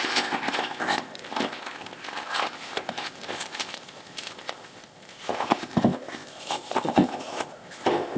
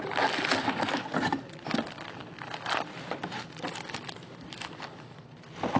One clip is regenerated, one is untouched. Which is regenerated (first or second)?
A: first